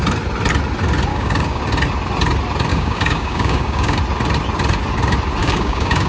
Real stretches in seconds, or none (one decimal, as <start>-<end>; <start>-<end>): 0.0-1.1; 1.6-2.7; 4.0-5.4